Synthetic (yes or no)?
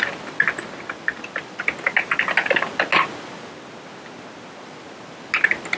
no